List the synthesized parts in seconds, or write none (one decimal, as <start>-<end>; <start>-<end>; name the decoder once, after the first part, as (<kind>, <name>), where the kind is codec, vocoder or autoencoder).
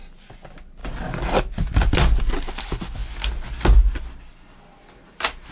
none